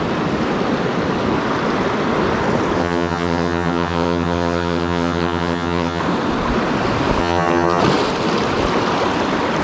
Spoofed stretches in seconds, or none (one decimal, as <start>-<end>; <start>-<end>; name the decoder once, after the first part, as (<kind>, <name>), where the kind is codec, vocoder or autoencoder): 2.8-6.0 (vocoder, HiFi-GAN); 7.2-7.8